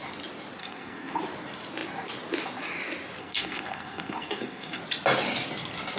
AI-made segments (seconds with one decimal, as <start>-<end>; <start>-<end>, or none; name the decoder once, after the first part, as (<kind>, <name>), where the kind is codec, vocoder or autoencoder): 0.6-1.2 (codec, SNAC); 3.2-4.8